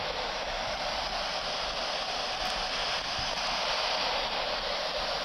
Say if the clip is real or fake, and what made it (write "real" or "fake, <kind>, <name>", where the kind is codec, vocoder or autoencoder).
real